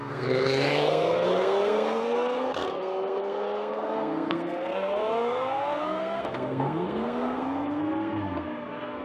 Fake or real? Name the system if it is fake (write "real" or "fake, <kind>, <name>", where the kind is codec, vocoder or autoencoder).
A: fake, codec, SNAC